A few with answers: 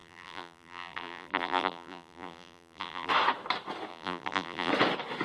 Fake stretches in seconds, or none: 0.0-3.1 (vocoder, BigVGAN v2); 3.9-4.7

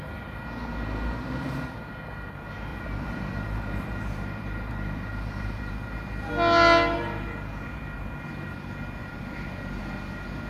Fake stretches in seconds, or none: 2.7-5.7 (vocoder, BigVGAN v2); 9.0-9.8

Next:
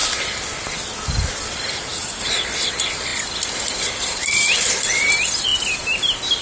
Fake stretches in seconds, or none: 1.2-3.1 (vocoder, BigVGAN v2); 3.8-5.5